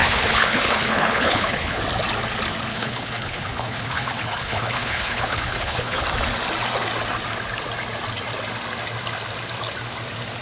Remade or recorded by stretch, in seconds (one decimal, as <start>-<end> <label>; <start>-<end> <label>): 0.0-1.8 remade; 1.8-2.7 recorded; 2.7-6.0 remade; 6.0-10.4 recorded